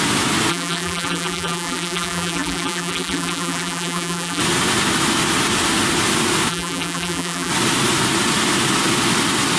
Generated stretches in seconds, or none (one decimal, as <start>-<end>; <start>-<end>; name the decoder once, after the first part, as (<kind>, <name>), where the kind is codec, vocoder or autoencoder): 0.5-4.4 (vocoder, BigVGAN v2); 6.5-7.5